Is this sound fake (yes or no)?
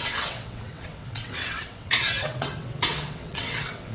yes